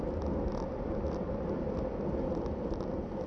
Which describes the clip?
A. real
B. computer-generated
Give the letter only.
A